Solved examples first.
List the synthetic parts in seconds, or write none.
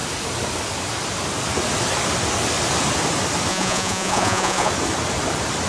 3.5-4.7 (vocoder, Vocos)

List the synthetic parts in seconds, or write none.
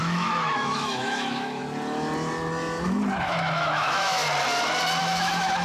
0.0-1.6 (autoencoder, DAC-VAE); 3.2-4.2; 5.0-5.6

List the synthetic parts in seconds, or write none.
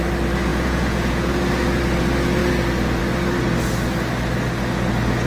0.5-1.3 (vocoder, Vocos)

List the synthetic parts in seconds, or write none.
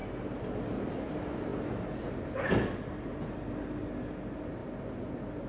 none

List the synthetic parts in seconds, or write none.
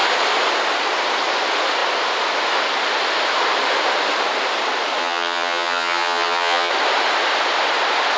5.0-6.7 (vocoder, HiFi-GAN)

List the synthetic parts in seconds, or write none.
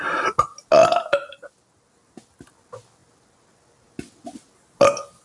none